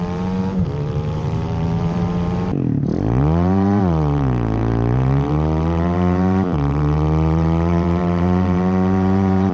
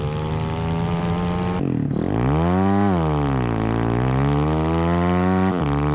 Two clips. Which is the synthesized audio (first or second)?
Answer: first